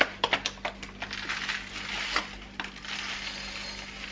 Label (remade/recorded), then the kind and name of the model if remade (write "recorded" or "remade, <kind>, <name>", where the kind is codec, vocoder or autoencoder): recorded